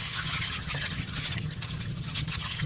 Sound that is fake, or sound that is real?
fake